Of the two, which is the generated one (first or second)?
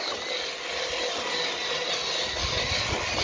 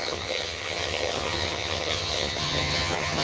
second